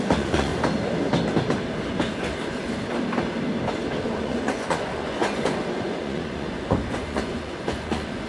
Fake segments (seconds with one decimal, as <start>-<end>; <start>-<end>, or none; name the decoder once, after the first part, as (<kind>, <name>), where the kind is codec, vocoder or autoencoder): 0.0-0.5 (vocoder, Vocos); 4.0-8.3